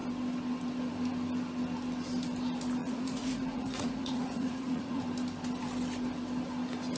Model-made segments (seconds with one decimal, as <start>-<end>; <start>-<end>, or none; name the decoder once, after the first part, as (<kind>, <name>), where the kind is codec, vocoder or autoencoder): 2.8-5.0 (vocoder, Vocos)